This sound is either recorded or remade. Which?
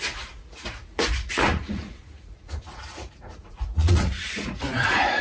remade